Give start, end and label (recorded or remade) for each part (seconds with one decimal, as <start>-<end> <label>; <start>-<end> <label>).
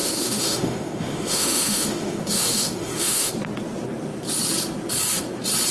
0.0-3.3 remade; 3.3-5.7 recorded